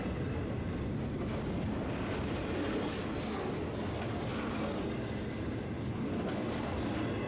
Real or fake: real